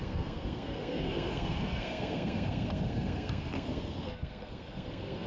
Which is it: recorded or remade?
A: remade